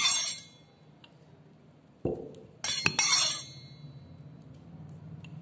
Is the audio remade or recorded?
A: recorded